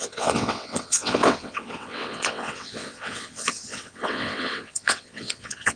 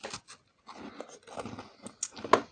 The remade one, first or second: first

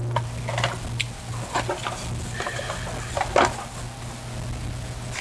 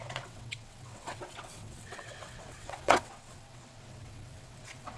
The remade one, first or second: second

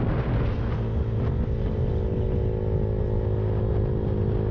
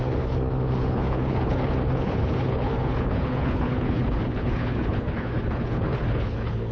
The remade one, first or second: second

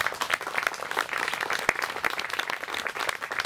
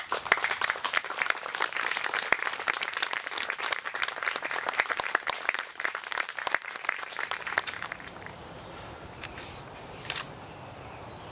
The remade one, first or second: second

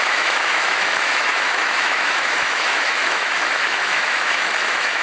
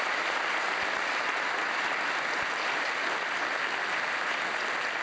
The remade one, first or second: first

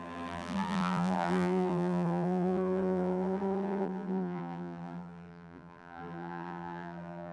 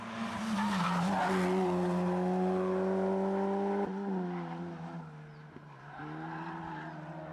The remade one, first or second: first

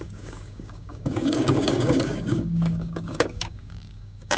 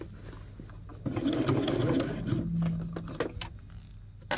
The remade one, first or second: first